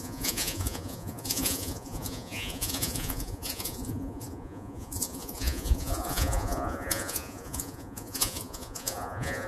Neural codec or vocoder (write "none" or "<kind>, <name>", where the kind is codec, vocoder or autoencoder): vocoder, Vocos